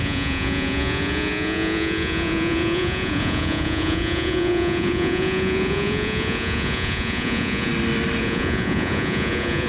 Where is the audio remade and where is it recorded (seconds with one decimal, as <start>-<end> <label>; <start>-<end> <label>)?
0.0-7.7 remade; 7.7-8.2 recorded; 8.2-9.7 remade